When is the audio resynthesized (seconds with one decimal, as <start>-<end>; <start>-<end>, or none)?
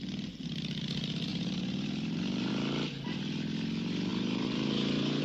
1.3-2.5; 4.1-5.2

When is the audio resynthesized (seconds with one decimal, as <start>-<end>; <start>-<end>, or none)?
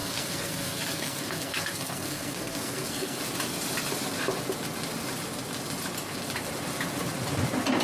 0.0-3.2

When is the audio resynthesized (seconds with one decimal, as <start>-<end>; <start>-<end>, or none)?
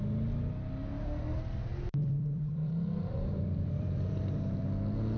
1.7-4.6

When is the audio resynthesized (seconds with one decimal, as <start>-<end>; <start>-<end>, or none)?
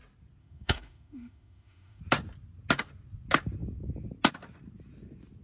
0.4-2.0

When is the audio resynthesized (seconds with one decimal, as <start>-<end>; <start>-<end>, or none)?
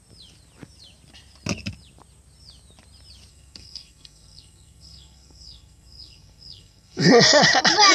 3.3-7.1